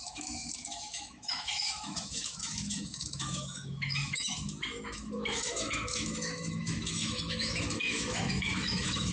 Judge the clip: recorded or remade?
remade